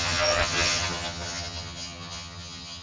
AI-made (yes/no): yes